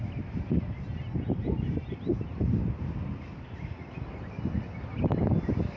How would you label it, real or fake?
real